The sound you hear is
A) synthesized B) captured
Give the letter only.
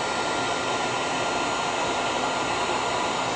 B